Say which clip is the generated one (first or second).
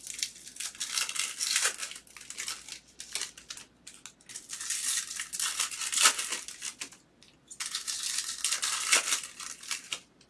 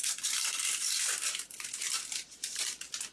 second